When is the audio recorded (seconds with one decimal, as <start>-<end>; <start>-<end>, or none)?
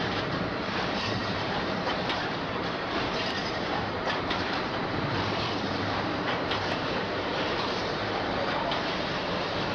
none